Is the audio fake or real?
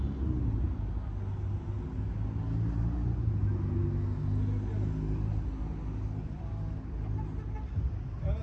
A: real